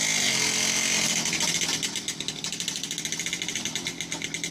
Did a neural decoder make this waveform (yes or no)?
no